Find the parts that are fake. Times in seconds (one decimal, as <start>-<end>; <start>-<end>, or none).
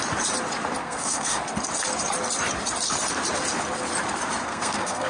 0.8-1.4; 4.4-5.1